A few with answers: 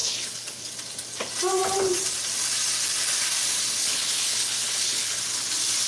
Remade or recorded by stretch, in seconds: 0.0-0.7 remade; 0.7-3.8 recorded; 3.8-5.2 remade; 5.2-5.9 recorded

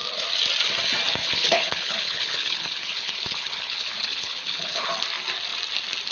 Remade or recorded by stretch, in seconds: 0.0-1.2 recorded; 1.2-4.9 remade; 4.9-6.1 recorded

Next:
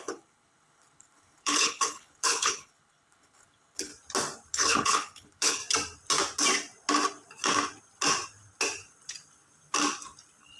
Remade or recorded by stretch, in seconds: 0.0-3.9 remade; 3.9-4.5 recorded; 4.5-5.6 remade; 5.6-10.6 recorded

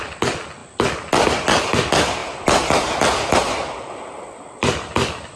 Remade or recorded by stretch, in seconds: 0.0-5.4 recorded